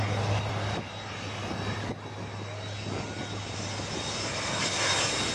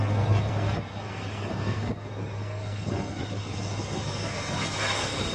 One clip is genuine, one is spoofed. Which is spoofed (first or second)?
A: second